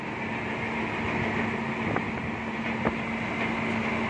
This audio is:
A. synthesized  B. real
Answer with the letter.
B